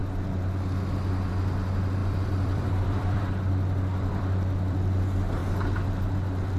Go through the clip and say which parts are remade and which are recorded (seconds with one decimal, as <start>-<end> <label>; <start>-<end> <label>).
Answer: 0.0-2.0 recorded; 2.0-3.2 remade; 3.2-3.9 recorded; 3.9-4.8 remade; 4.8-6.6 recorded